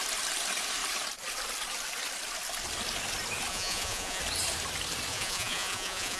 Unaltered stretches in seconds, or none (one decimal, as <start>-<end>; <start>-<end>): 0.0-3.5; 4.2-5.1